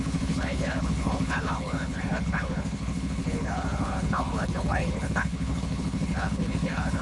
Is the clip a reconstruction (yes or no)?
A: yes